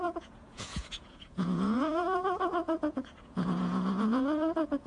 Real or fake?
fake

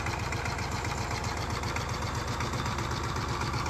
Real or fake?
real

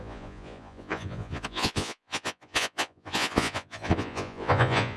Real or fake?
fake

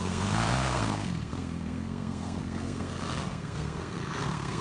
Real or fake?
fake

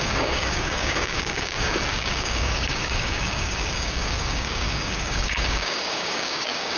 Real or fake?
fake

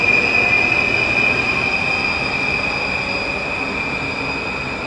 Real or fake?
real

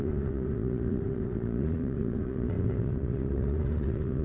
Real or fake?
fake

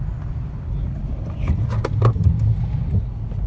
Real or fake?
real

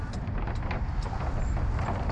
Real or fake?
real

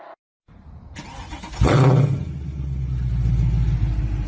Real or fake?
real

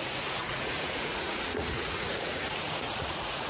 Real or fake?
fake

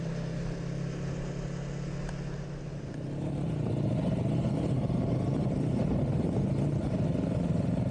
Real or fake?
real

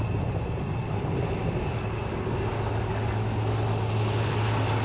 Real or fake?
real